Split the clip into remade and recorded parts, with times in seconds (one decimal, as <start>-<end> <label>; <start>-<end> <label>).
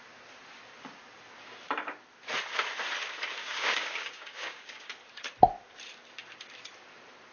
0.0-3.4 recorded; 3.4-4.9 remade; 4.9-7.3 recorded